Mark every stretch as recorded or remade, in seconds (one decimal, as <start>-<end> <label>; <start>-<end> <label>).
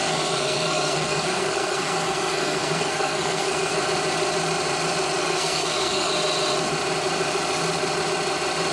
0.0-3.8 remade; 3.8-5.2 recorded; 5.2-6.1 remade; 6.1-8.7 recorded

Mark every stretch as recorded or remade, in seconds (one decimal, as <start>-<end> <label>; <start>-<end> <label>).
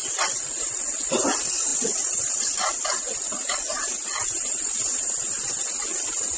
0.0-6.4 recorded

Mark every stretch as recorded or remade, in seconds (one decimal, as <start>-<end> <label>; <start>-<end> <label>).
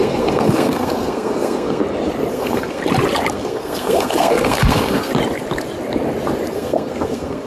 0.0-1.8 remade; 1.8-2.3 recorded; 2.3-2.8 remade; 2.8-3.3 recorded; 3.3-5.1 remade; 5.1-6.5 recorded; 6.5-7.5 remade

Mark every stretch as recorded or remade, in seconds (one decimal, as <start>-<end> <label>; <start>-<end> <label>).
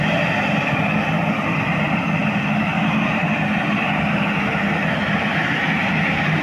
0.0-6.4 recorded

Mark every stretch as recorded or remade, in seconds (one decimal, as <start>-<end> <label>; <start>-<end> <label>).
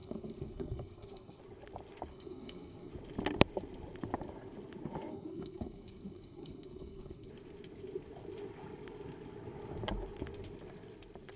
0.0-1.4 remade; 1.4-2.1 recorded; 2.1-2.9 remade; 2.9-5.1 recorded; 5.1-7.3 remade; 7.3-11.4 recorded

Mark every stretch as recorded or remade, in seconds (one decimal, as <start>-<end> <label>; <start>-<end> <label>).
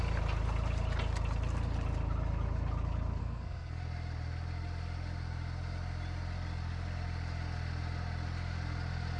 0.0-3.2 recorded; 3.2-3.8 remade; 3.8-9.2 recorded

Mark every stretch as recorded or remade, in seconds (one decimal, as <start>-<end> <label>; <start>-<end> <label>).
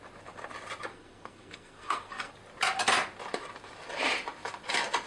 0.0-0.9 recorded; 0.9-2.3 remade; 2.3-5.1 recorded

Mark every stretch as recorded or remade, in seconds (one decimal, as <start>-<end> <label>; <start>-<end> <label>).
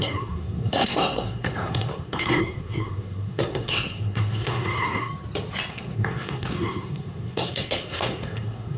0.0-5.1 remade; 5.1-5.7 recorded; 5.7-8.8 remade